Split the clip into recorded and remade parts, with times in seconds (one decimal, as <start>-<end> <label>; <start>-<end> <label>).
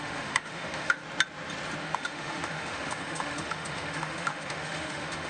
0.0-1.0 remade; 1.0-1.8 recorded; 1.8-5.3 remade